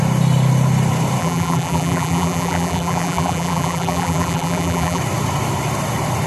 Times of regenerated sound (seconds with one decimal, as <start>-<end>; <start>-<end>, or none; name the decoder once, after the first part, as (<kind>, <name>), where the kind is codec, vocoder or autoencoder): 1.2-5.0 (vocoder, BigVGAN v2)